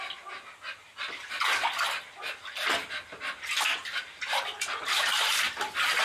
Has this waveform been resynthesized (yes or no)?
no